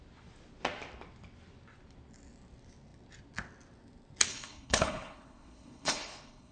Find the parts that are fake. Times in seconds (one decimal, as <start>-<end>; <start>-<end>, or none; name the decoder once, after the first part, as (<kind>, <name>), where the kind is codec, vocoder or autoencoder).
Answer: 4.3-6.5 (codec, HILCodec)